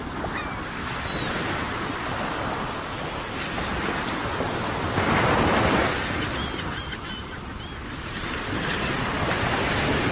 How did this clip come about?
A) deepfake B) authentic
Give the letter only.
B